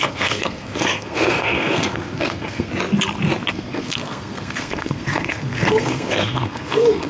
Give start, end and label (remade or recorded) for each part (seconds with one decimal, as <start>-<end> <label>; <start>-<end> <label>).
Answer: 0.0-2.7 remade; 2.7-3.5 recorded; 3.5-7.1 remade